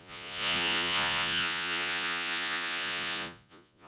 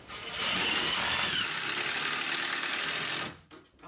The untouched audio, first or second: second